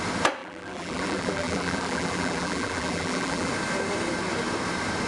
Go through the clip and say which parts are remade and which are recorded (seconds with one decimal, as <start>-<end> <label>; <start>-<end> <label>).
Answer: 0.0-0.4 recorded; 0.4-3.5 remade; 3.5-5.1 recorded